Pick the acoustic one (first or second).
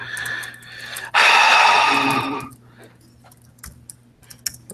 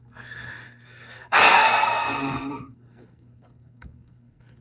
first